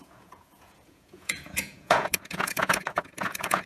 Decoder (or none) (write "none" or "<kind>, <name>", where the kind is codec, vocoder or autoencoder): vocoder, Vocos